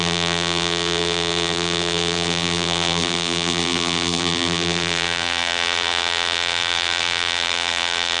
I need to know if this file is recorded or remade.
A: remade